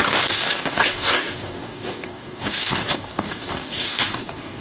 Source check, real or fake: fake